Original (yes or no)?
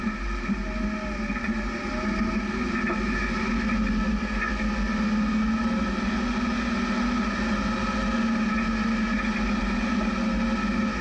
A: yes